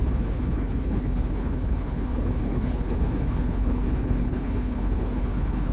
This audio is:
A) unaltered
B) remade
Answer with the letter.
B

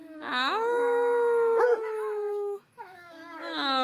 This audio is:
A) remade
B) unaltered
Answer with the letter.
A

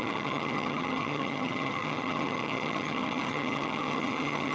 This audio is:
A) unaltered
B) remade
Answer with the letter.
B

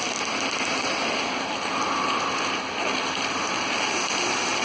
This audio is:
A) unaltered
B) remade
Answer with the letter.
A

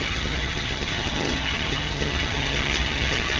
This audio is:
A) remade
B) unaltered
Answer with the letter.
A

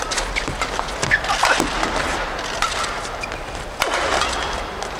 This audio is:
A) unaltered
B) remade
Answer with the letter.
A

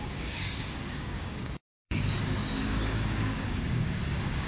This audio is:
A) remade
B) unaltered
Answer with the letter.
A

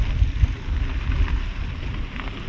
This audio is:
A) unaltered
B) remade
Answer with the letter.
A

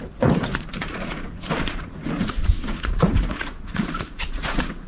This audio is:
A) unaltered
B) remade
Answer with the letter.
B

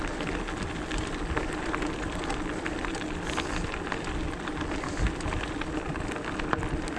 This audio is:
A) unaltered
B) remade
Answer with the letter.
A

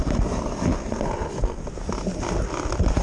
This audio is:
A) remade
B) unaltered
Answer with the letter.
B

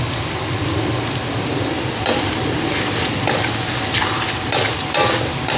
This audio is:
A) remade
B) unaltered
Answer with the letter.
A